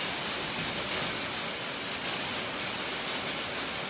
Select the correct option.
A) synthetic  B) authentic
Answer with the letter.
B